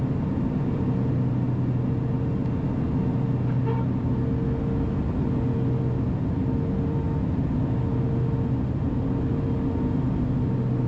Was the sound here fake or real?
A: real